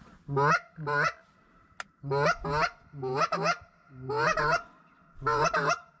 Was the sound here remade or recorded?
recorded